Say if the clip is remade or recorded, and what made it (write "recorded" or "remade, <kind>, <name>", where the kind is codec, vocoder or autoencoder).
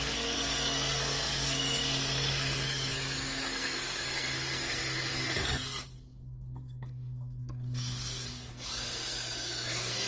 remade, codec, SNAC